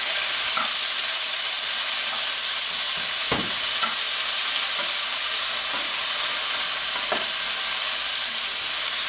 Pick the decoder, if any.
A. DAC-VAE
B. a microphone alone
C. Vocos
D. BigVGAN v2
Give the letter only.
D